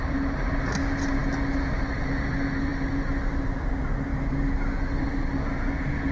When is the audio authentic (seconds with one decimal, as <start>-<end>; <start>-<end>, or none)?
0.0-4.1; 5.0-6.1